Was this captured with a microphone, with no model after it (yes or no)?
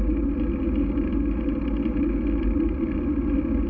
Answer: yes